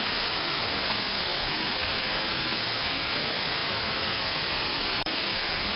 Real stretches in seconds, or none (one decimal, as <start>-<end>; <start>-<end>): none